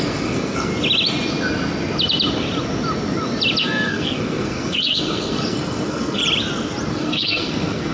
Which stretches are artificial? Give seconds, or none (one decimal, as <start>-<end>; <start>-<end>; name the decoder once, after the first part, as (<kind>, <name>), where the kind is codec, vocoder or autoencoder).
0.0-0.7 (codec, SNAC); 3.6-6.2; 6.9-7.9